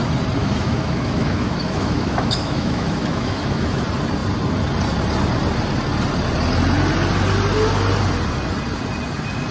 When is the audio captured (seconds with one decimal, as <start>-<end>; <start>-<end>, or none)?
0.0-0.4; 3.8-9.5